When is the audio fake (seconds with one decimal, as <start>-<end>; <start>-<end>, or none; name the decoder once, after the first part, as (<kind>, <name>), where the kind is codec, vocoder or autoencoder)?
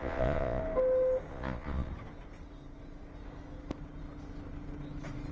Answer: 0.0-0.6 (vocoder, Vocos); 1.3-1.9